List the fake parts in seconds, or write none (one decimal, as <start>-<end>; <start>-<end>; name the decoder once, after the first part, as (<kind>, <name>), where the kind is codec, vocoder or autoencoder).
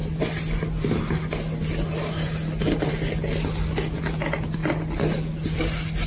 none